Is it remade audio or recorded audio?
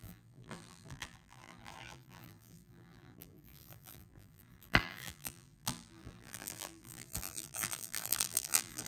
remade